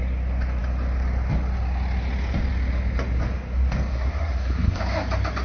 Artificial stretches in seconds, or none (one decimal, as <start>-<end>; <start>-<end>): 3.9-4.8